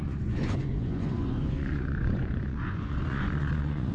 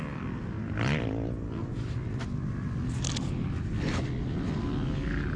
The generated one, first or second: first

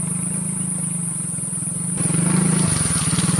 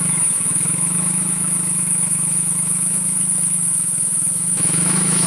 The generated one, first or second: second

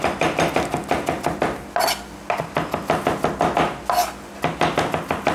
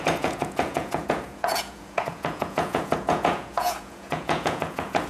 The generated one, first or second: second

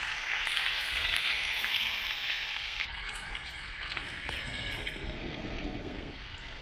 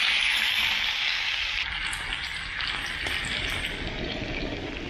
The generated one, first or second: first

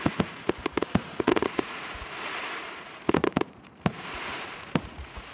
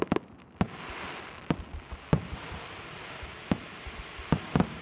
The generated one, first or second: first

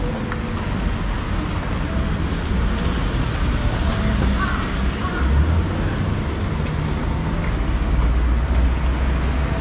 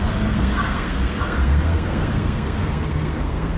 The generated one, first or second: second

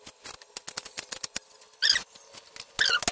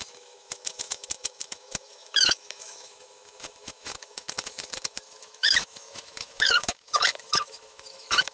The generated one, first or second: second